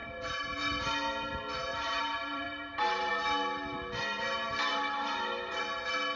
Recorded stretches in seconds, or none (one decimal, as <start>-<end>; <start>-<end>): 0.6-1.7; 3.1-4.7; 5.6-6.2